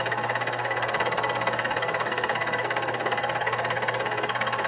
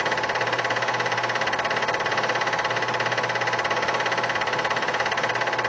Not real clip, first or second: first